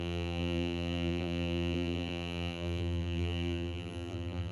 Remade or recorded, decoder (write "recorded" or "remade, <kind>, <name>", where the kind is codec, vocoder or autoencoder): remade, vocoder, BigVGAN v2